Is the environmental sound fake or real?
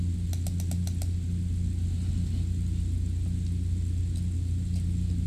real